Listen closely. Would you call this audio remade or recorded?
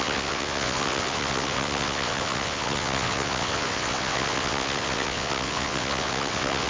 remade